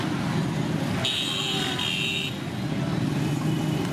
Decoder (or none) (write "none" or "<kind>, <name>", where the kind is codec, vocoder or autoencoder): none